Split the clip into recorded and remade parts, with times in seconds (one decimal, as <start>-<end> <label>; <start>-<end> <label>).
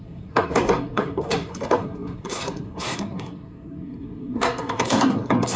0.0-5.6 remade